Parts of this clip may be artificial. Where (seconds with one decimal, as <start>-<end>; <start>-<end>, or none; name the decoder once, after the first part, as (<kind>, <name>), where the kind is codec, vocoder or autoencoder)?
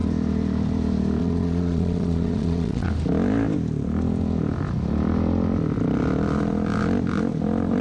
1.2-2.9 (vocoder, Vocos)